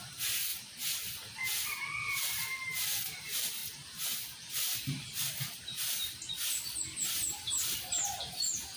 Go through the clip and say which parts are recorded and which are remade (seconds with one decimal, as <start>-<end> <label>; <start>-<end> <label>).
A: 0.0-0.5 remade; 0.5-1.8 recorded; 1.8-3.6 remade; 3.6-4.5 recorded; 4.5-6.0 remade; 6.0-7.0 recorded; 7.0-8.8 remade